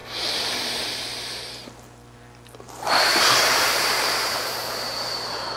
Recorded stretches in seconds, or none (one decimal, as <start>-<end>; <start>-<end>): 0.0-3.0